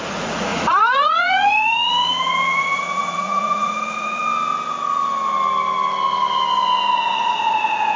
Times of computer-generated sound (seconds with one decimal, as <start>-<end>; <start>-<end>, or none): 0.0-4.2; 7.1-8.0